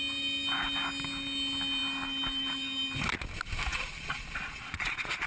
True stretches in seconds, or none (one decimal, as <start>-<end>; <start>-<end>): 0.0-3.7